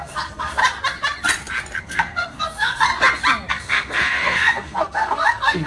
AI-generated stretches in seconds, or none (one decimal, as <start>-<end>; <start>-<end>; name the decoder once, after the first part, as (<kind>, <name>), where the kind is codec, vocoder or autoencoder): 0.0-0.6 (codec, SNAC); 1.8-2.9; 3.5-5.7